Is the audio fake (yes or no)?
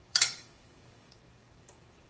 yes